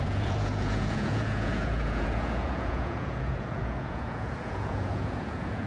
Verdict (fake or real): fake